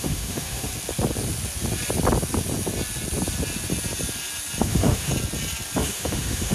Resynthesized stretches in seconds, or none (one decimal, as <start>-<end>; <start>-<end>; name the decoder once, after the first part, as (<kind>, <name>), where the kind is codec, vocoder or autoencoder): 0.0-0.7 (autoencoder, DAC-VAE); 4.6-5.1; 5.8-6.5